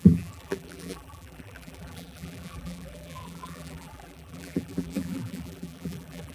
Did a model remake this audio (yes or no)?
yes